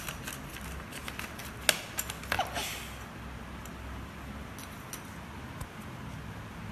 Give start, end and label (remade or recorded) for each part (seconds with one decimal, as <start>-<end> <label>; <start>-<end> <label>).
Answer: 0.0-6.7 recorded